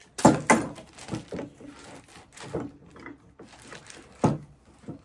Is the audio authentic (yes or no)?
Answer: yes